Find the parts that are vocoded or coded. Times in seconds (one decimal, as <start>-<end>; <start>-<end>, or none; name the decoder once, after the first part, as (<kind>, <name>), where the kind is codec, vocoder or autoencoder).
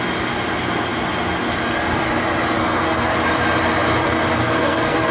2.6-3.1 (codec, SNAC); 4.4-5.1